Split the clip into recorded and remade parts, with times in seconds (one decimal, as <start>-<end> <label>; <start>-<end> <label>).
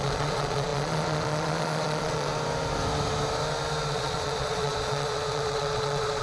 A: 0.0-2.3 remade; 2.3-3.9 recorded; 3.9-6.2 remade